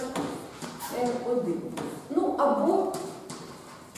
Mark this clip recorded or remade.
remade